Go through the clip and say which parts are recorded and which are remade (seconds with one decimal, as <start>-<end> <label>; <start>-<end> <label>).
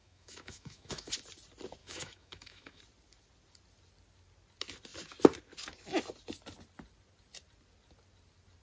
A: 0.0-1.1 remade; 1.1-1.8 recorded; 1.8-2.8 remade; 2.8-8.6 recorded